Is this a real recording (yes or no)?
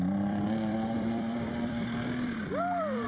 no